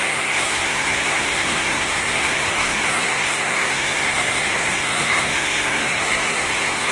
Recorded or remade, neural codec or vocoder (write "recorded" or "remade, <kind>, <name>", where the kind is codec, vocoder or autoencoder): remade, codec, SNAC